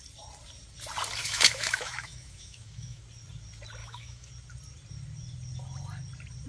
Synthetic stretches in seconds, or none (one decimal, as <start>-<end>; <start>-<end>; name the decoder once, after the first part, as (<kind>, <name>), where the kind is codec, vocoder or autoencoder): 1.2-3.0 (autoencoder, DAC-VAE); 3.8-4.3

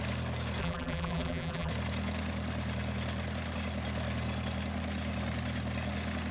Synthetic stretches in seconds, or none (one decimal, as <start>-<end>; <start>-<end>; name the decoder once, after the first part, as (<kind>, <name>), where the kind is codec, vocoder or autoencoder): 0.6-1.7 (vocoder, BigVGAN v2)